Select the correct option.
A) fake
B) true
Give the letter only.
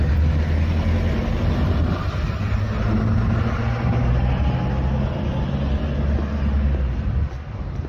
B